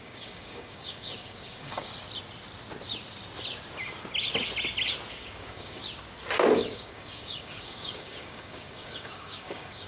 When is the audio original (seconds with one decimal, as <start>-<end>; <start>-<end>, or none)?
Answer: 1.9-5.1; 5.8-6.5